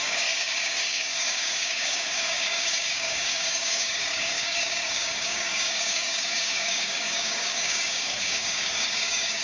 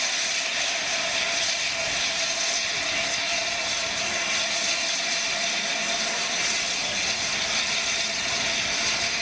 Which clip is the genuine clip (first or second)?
second